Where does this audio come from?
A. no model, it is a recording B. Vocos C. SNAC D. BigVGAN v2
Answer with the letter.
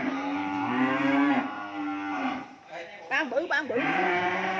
D